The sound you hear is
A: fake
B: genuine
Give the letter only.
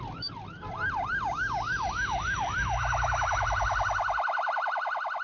B